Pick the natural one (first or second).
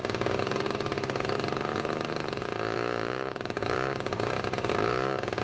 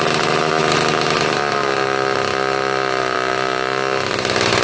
second